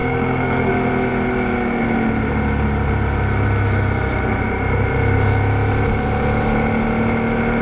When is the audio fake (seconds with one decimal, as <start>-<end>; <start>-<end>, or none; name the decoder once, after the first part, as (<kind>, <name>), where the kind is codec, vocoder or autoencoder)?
0.0-0.7 (codec, SNAC)